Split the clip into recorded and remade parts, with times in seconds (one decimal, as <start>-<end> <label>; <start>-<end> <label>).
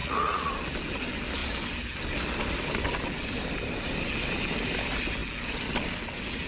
0.0-0.5 remade; 0.5-6.5 recorded